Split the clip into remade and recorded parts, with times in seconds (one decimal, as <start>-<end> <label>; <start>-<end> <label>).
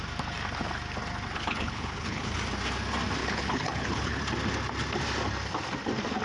0.0-1.3 recorded; 1.3-2.4 remade; 2.4-3.2 recorded; 3.2-4.2 remade; 4.2-6.2 recorded